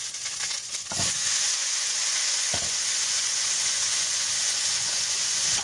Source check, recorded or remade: remade